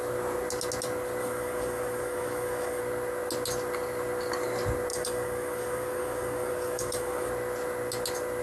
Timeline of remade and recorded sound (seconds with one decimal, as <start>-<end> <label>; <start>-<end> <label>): 0.0-1.2 recorded; 1.2-2.8 remade; 2.8-4.9 recorded; 4.9-7.3 remade; 7.3-8.4 recorded

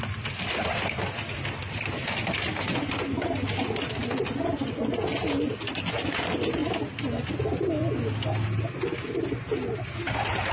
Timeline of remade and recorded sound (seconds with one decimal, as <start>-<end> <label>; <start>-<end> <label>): 0.0-10.5 recorded

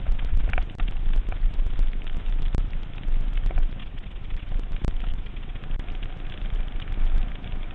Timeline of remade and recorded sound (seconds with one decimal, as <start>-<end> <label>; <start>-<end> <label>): 0.0-3.8 recorded; 3.8-4.5 remade; 4.5-5.1 recorded; 5.1-5.6 remade; 5.6-7.7 recorded

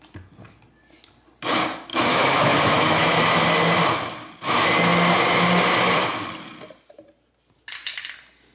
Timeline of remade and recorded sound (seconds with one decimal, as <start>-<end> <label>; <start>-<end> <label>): 0.0-1.9 recorded; 1.9-3.1 remade; 3.1-8.5 recorded